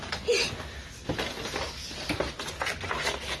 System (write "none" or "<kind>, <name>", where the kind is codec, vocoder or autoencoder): none